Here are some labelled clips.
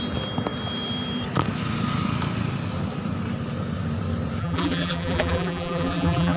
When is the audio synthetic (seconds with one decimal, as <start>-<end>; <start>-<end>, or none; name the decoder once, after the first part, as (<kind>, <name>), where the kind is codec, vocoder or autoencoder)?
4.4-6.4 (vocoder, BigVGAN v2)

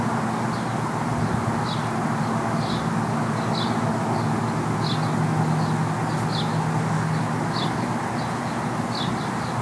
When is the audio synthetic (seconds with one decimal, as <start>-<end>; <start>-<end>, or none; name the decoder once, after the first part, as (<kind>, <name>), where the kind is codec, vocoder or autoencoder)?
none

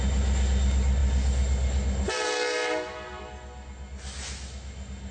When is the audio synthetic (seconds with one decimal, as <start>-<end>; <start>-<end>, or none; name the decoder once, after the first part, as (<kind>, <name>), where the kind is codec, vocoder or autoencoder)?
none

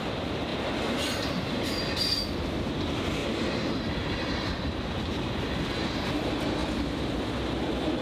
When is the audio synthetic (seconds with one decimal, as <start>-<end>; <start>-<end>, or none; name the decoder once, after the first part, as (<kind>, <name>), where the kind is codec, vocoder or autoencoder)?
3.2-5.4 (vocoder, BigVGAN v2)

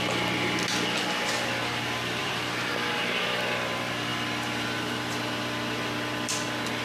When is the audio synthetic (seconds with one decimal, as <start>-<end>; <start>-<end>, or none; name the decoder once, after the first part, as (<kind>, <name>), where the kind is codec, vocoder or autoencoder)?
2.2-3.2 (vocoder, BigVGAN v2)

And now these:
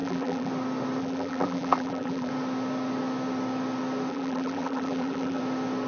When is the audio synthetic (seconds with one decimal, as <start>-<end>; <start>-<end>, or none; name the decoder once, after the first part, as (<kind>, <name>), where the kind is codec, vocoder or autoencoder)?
0.0-0.5 (vocoder, BigVGAN v2); 1.0-2.3; 4.1-5.4

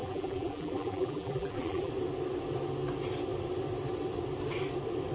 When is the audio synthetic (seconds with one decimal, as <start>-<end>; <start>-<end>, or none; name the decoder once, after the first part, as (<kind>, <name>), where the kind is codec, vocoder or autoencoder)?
0.0-1.9 (vocoder, BigVGAN v2)

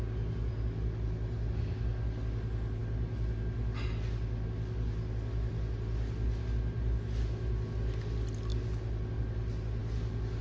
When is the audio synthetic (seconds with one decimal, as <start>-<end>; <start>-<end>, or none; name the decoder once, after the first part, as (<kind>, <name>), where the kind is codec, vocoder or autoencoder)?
none